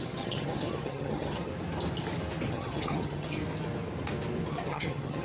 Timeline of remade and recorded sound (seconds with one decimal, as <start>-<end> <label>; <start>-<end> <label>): 0.0-1.5 remade; 1.5-2.5 recorded; 2.5-3.4 remade; 3.4-4.5 recorded; 4.5-5.2 remade